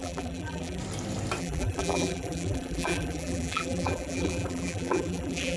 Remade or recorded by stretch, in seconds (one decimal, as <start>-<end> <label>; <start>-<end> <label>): 0.0-0.8 remade; 0.8-1.4 recorded; 1.4-5.6 remade